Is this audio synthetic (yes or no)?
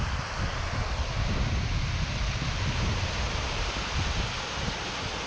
no